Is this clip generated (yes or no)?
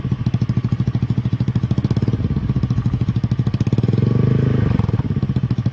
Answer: no